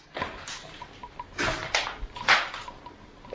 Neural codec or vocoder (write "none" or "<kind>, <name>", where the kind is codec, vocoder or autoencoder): none